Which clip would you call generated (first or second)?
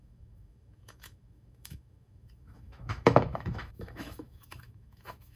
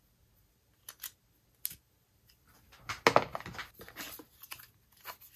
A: first